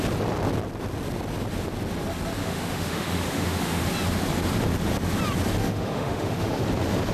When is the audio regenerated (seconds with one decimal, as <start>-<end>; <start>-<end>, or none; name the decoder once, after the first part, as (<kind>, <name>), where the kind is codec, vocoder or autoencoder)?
2.4-3.8 (autoencoder, DAC-VAE); 5.6-6.6